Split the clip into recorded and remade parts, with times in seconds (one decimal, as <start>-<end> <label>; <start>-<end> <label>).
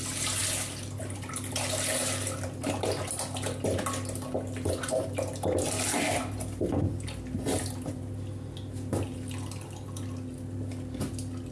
0.0-11.5 recorded